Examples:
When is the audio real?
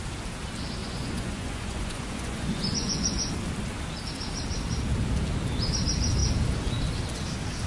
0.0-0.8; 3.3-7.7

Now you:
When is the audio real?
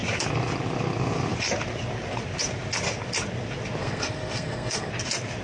0.0-3.8; 4.9-5.4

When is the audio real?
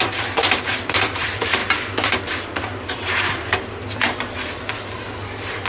1.6-2.9; 4.4-5.7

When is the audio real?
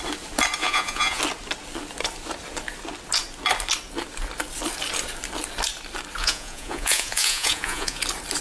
0.0-0.6; 1.2-6.2; 8.0-8.4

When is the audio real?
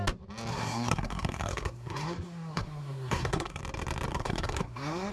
0.0-0.5; 3.6-4.1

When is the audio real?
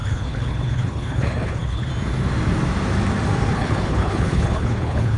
1.9-3.5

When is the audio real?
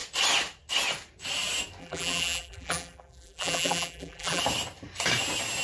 0.0-1.8; 4.4-5.6